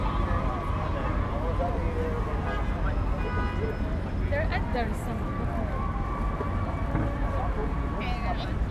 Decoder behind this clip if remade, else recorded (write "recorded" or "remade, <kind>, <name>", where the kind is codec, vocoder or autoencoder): recorded